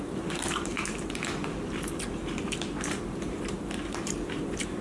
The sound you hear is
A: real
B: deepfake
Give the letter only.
B